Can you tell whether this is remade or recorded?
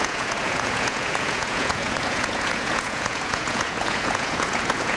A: remade